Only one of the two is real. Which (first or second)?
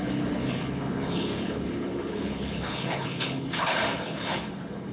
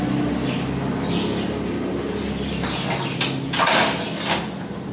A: second